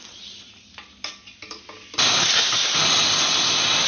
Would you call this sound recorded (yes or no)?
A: yes